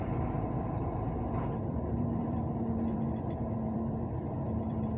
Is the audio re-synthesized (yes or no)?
yes